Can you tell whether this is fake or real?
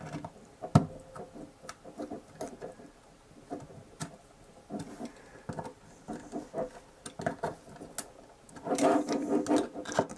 real